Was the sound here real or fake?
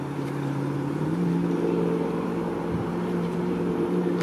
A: fake